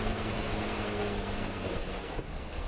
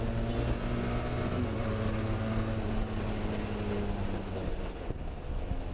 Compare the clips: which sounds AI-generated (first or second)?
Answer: first